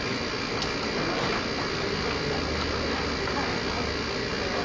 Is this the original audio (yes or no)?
yes